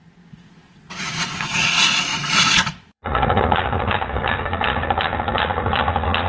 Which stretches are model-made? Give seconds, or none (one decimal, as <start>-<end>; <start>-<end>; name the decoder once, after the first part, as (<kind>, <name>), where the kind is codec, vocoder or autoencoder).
0.0-6.3 (vocoder, Vocos)